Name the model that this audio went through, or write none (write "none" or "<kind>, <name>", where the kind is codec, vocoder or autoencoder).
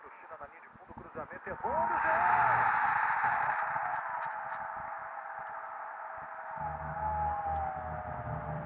none